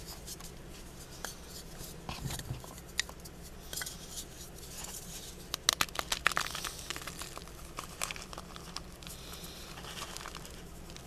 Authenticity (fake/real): real